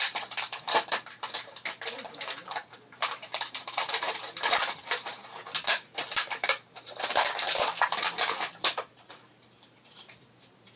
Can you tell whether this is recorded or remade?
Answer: remade